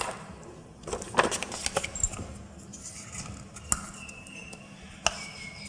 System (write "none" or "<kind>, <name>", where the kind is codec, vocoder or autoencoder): none